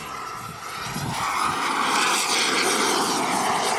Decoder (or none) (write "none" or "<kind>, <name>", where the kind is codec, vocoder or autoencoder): none